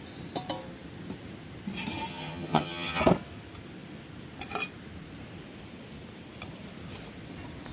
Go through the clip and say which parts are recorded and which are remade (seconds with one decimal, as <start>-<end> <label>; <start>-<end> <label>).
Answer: 0.0-2.1 recorded; 2.1-3.0 remade; 3.0-7.7 recorded